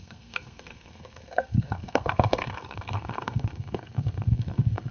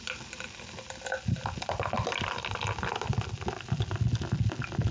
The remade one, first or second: first